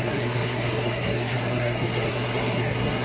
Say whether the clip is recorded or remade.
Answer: remade